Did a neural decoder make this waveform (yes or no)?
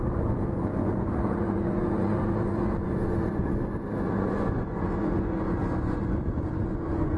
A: yes